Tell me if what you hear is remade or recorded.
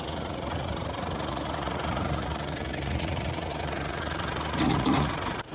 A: remade